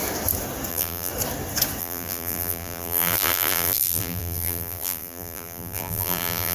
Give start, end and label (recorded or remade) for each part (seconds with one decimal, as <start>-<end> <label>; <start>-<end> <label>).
0.0-0.7 recorded; 0.7-1.1 remade; 1.1-1.8 recorded; 1.8-6.5 remade